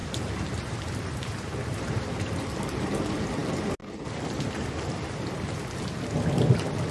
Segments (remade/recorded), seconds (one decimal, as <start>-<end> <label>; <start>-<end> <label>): 0.0-2.1 remade; 2.1-6.9 recorded